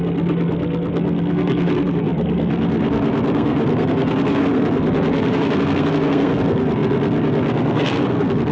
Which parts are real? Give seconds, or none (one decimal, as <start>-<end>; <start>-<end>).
none